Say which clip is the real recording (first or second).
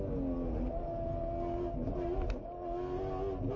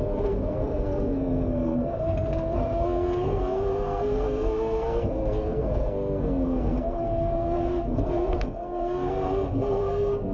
first